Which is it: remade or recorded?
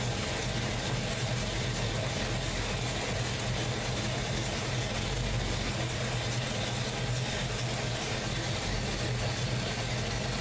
recorded